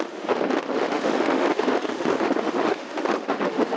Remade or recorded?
remade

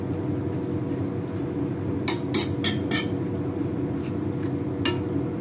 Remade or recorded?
recorded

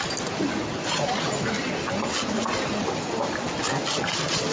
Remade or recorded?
recorded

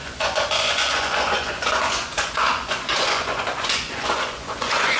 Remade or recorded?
remade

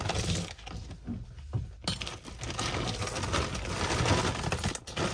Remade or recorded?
recorded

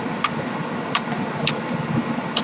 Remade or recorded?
recorded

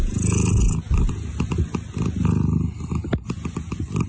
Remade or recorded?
recorded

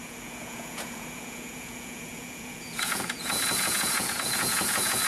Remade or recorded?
remade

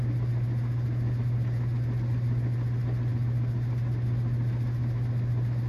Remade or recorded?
recorded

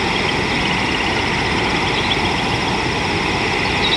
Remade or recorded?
recorded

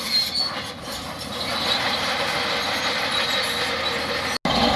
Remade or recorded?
recorded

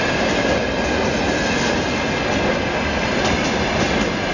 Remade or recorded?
recorded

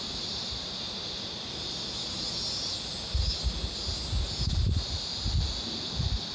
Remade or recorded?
recorded